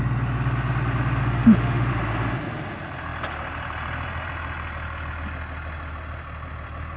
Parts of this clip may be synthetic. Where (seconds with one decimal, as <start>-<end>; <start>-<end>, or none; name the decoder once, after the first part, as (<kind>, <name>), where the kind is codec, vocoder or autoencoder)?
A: 1.2-1.9 (autoencoder, DAC-VAE)